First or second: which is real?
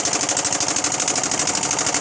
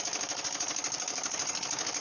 first